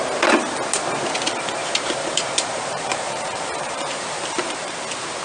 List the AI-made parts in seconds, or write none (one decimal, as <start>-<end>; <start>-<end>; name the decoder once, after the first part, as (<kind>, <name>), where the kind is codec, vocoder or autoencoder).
1.6-4.7 (vocoder, BigVGAN v2)